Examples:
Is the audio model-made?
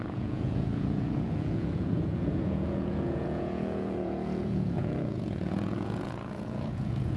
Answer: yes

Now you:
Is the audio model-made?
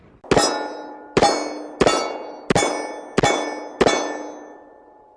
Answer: no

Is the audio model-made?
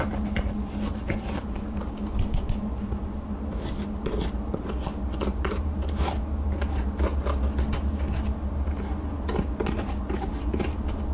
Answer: no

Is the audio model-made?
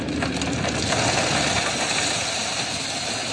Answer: no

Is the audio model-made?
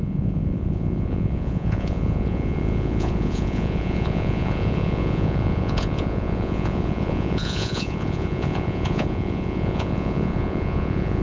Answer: yes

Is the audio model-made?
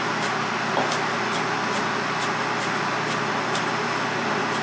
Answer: no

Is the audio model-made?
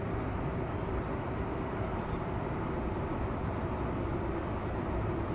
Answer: no